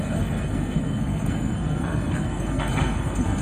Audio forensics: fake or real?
fake